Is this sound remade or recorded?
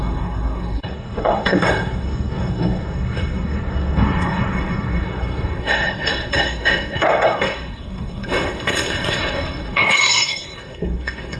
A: remade